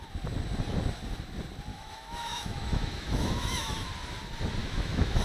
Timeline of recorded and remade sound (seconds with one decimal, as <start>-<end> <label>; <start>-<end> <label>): 0.0-1.7 recorded; 1.7-3.9 remade; 3.9-4.6 recorded; 4.6-5.2 remade